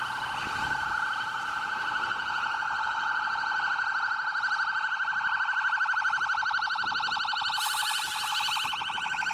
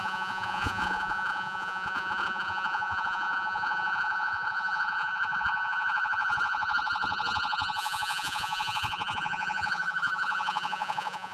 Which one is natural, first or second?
first